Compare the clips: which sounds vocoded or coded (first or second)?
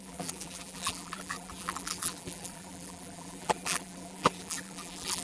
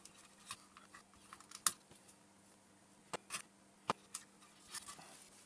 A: first